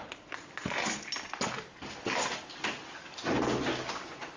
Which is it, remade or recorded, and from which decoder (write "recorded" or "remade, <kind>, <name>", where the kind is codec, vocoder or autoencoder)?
recorded